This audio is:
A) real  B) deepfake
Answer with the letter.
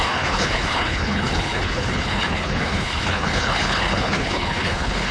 B